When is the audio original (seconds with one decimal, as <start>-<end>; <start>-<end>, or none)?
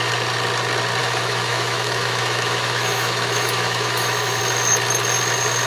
0.0-1.0; 4.4-5.7